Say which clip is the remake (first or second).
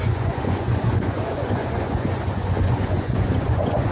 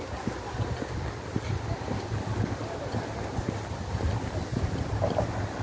first